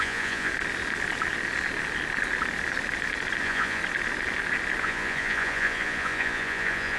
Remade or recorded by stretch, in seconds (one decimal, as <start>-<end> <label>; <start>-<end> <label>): 0.0-0.5 remade; 0.5-3.4 recorded; 3.4-3.8 remade; 3.8-4.8 recorded; 4.8-7.0 remade